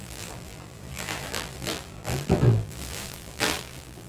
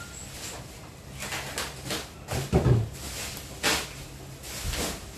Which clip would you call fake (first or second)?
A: first